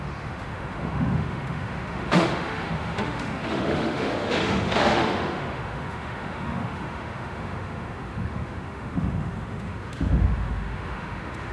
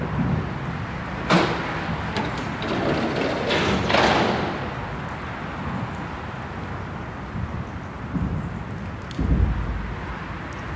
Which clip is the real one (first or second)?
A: second